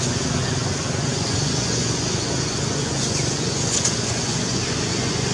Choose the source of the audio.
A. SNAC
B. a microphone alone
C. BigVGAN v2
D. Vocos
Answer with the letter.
D